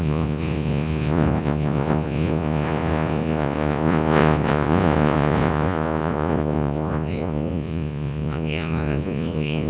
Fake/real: fake